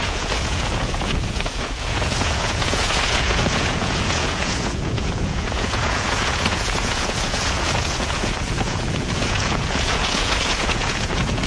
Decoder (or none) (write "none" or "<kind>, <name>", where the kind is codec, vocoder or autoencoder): vocoder, Vocos